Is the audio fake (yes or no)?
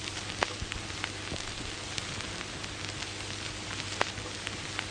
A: no